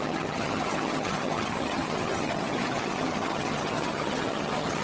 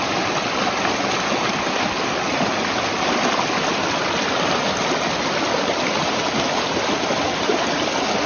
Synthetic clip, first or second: first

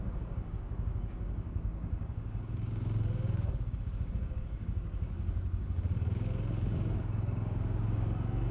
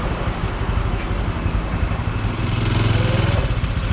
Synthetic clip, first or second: first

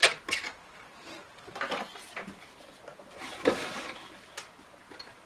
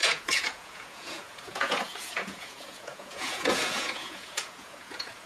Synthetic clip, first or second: second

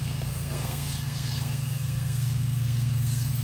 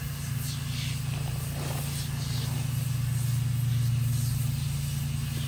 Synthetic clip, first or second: first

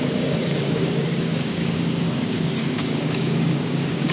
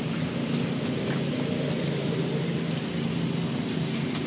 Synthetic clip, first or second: first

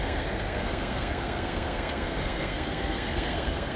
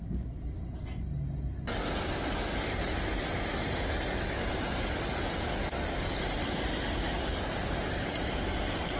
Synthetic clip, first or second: first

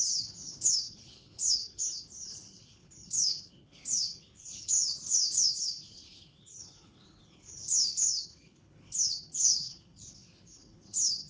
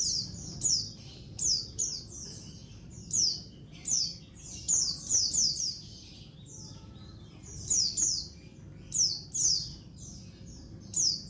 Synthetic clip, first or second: first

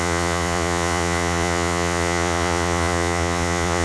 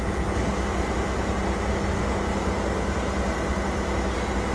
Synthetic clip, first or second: first